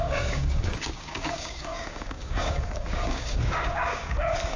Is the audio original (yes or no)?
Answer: no